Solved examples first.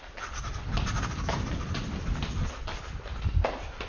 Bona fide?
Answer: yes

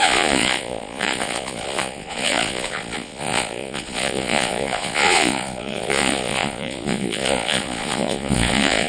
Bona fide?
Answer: no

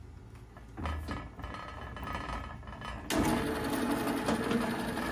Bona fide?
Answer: yes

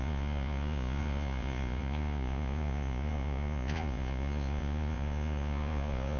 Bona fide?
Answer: no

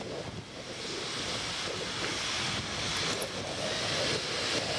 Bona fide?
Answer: yes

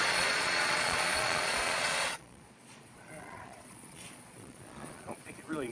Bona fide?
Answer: no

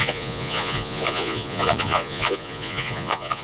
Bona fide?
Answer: no